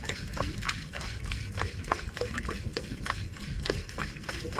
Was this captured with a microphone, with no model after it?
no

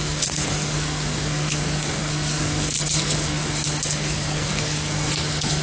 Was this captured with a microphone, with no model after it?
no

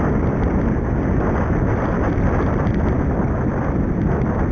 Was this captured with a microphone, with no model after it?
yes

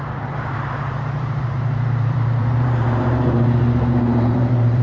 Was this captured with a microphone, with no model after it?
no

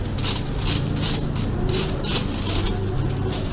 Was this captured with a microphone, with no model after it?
yes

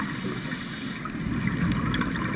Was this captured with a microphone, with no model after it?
yes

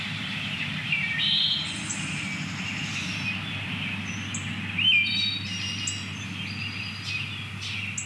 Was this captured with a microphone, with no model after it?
yes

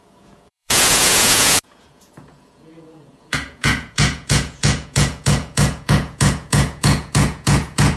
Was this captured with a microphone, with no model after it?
no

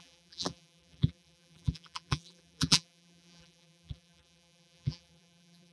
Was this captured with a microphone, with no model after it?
no